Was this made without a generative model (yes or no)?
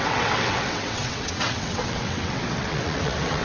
no